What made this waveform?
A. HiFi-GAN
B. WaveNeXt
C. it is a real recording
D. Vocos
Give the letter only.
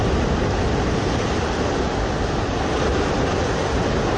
C